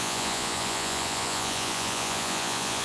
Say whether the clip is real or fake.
fake